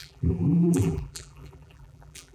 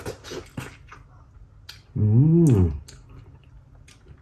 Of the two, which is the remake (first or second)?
first